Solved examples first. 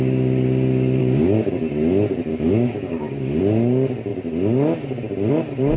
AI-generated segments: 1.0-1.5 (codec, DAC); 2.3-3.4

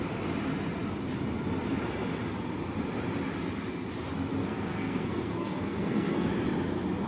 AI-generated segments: 4.4-6.3 (codec, SNAC)

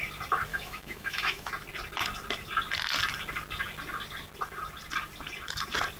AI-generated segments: 0.5-1.5 (autoencoder, DAC-VAE)